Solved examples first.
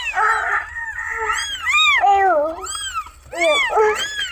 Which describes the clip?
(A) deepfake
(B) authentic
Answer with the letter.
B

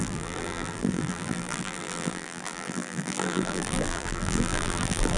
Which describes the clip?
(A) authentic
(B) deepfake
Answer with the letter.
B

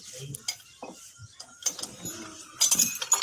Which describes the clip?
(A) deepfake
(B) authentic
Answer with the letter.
B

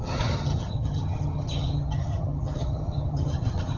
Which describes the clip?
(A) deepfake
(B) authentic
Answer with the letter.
A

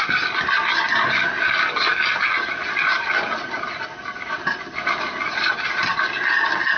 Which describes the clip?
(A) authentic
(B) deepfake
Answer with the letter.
A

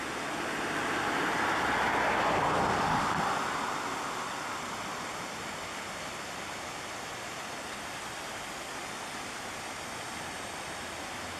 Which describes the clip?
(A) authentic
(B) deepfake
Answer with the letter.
A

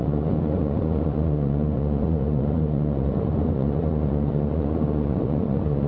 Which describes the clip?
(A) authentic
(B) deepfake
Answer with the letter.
B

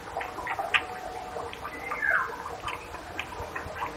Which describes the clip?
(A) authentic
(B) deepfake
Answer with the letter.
A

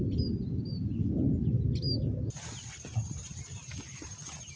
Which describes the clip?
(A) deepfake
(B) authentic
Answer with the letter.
B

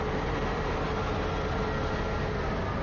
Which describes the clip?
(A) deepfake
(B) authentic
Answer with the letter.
B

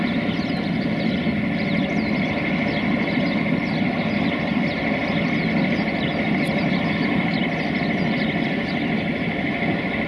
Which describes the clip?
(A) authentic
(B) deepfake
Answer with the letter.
A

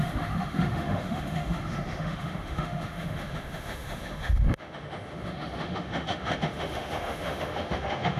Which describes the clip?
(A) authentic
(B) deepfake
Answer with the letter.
B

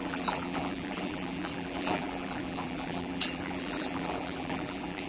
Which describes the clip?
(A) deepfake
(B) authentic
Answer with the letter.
A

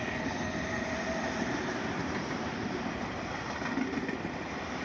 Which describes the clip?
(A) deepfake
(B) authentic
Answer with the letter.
B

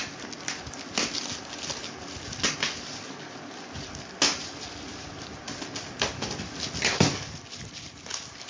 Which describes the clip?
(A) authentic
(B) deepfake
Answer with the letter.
A